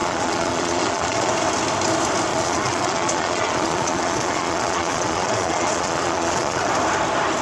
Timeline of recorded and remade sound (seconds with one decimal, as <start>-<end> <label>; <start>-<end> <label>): 0.0-1.3 remade; 1.3-2.3 recorded; 2.3-6.7 remade; 6.7-7.4 recorded